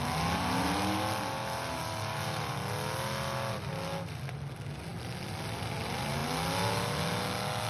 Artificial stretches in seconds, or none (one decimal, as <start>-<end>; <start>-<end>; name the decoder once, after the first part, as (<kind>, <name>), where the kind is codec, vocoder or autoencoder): none